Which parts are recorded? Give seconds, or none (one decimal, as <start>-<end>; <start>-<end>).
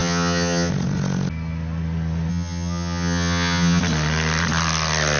0.7-2.3; 3.8-5.2